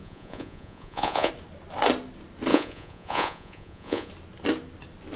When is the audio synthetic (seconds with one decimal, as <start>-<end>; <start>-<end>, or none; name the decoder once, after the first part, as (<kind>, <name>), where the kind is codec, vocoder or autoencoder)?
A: 0.0-1.3 (vocoder, Vocos); 2.5-4.1